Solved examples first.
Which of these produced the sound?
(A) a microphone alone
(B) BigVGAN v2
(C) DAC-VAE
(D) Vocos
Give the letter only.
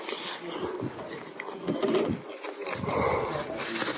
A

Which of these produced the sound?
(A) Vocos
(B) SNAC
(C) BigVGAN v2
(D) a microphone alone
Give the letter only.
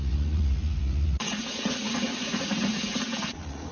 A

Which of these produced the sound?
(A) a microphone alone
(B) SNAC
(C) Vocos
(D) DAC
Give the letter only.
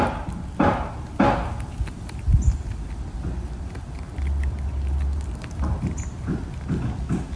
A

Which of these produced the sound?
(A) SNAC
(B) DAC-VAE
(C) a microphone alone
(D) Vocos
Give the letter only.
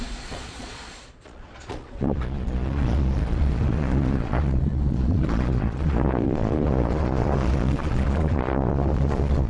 D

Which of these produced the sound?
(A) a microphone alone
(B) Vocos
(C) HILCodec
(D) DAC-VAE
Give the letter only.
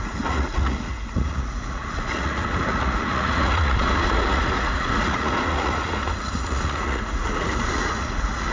B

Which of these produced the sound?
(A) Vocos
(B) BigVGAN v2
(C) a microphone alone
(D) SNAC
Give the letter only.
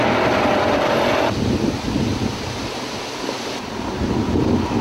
C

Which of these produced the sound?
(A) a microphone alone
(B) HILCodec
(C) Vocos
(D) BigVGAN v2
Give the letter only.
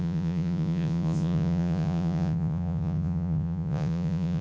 C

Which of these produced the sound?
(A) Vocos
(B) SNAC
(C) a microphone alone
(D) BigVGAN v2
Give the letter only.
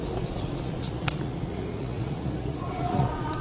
A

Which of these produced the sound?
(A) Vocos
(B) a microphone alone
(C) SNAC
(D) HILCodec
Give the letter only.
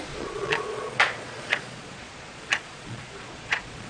A